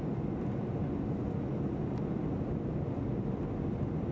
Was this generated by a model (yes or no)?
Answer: no